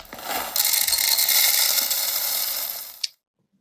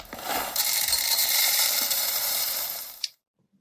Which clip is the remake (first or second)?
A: second